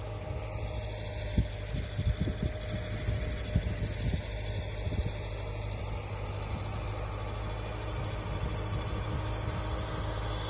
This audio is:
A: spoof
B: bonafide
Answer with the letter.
B